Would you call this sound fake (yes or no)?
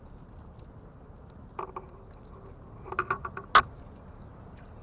no